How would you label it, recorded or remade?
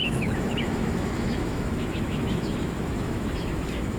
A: remade